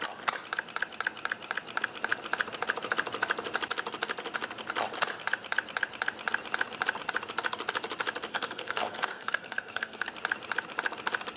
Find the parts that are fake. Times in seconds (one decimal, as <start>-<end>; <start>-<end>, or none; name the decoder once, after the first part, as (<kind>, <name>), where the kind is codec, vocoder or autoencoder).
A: 8.3-10.1 (codec, SNAC)